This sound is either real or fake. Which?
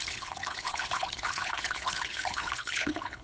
fake